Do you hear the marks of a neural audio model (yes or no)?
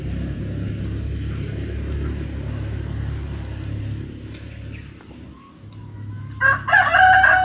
no